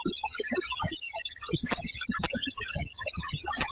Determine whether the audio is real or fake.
fake